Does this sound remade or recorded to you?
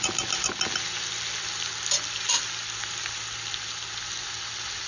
recorded